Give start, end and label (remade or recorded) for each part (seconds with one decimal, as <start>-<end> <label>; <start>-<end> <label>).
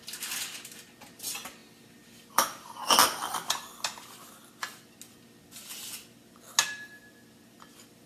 0.0-8.1 recorded